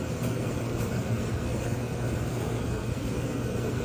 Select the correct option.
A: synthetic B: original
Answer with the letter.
A